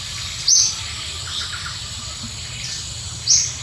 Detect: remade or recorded recorded